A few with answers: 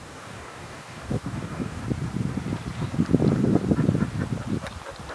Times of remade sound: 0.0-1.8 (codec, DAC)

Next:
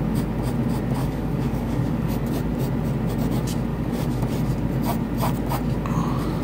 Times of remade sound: 1.0-2.3 (codec, DAC); 3.7-4.2

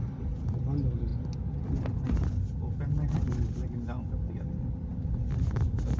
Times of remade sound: none

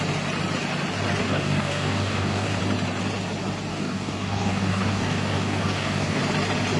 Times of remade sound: 1.2-2.6 (codec, DAC); 3.7-6.2

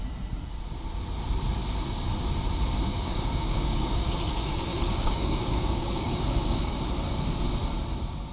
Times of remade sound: 2.9-6.8 (codec, DAC)

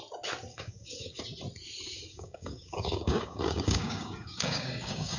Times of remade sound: 0.5-1.2 (codec, DAC); 2.1-5.2